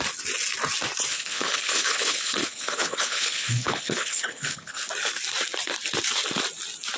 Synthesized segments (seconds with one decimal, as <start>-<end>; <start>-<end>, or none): 1.1-4.9

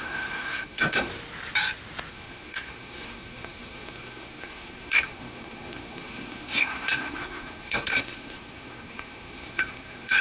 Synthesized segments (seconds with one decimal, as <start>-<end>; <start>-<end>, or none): 0.0-1.1; 2.1-10.2